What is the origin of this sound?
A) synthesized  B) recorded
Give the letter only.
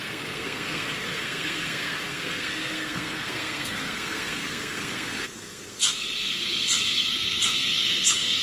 A